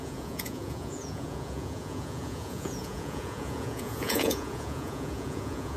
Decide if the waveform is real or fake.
fake